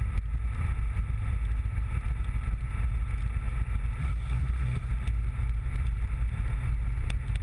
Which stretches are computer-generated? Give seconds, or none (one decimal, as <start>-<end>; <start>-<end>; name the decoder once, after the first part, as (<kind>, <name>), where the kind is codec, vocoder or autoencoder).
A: 4.0-4.9 (codec, SNAC)